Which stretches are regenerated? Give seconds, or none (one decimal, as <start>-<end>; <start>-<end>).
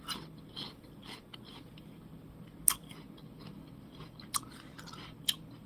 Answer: none